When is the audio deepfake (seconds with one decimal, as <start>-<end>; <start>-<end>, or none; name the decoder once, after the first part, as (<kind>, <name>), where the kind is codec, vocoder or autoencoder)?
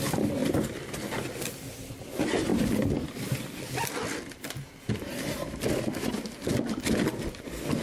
none